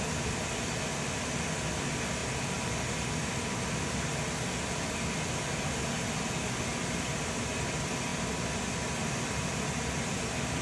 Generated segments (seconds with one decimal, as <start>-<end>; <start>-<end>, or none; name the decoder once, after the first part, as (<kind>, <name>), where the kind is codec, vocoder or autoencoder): none